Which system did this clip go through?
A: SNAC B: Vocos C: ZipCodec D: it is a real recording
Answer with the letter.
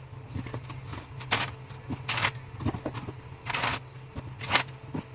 D